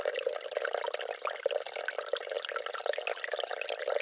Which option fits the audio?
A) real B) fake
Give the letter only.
A